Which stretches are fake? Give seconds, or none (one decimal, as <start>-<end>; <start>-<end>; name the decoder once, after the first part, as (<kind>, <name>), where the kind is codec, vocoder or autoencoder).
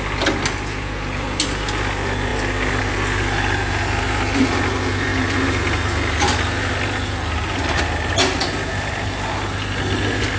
none